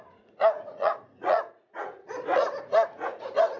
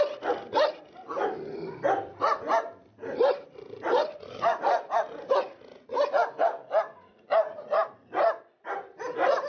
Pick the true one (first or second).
second